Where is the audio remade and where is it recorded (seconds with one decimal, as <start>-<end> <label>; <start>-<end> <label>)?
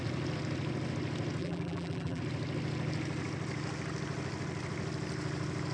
0.0-1.4 recorded; 1.4-2.2 remade; 2.2-5.7 recorded